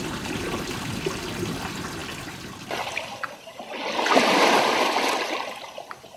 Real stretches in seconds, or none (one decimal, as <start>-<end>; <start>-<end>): 0.0-6.2